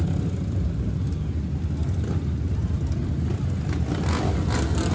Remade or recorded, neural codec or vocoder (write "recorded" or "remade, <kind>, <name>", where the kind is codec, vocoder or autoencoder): recorded